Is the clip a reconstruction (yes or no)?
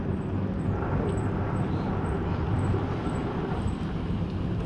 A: no